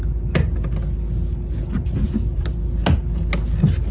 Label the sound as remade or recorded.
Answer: recorded